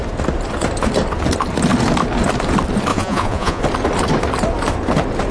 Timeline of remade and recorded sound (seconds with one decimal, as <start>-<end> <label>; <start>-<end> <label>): 0.0-2.9 recorded; 2.9-3.6 remade; 3.6-5.3 recorded